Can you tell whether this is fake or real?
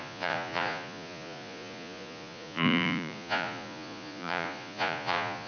fake